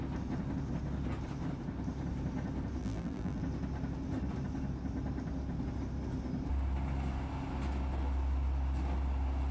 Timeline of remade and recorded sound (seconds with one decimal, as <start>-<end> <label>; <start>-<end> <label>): 0.0-2.8 recorded; 2.8-3.4 remade; 3.4-9.5 recorded